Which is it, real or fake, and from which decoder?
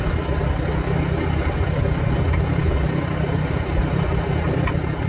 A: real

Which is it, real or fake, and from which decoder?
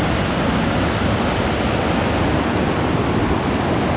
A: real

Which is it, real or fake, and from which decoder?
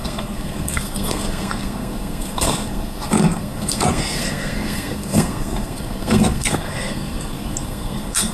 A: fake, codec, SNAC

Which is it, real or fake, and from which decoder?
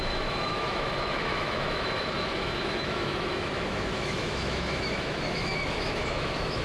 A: fake, autoencoder, DAC-VAE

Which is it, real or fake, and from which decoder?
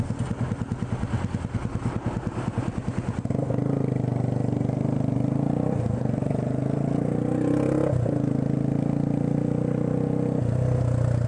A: real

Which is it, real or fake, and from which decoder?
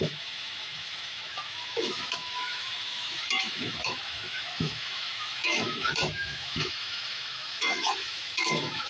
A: fake, autoencoder, DAC-VAE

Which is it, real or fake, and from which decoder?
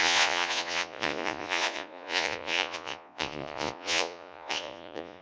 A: fake, vocoder, Vocos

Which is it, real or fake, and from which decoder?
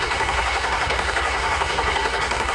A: fake, codec, SNAC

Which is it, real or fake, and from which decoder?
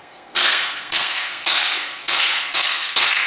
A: fake, codec, SNAC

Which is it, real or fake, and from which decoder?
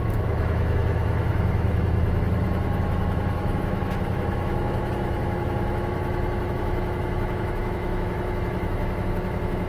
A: fake, autoencoder, DAC-VAE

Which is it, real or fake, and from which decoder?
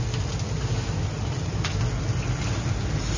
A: real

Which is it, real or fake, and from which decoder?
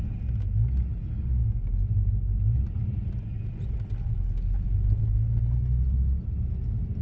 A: real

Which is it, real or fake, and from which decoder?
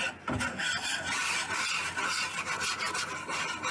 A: real